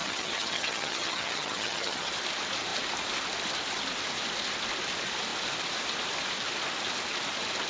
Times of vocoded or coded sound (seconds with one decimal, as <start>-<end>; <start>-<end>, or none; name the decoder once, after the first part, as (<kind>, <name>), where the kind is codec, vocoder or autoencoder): 0.0-2.1 (vocoder, HiFi-GAN)